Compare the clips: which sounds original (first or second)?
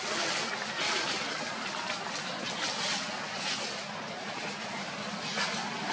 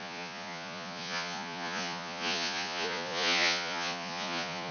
first